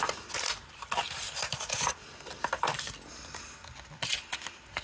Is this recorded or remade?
recorded